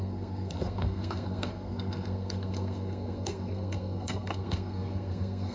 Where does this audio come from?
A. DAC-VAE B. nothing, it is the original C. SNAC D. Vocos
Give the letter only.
C